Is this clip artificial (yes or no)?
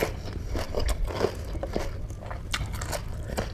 no